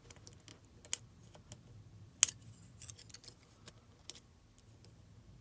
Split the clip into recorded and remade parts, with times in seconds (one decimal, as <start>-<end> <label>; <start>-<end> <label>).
0.0-5.4 recorded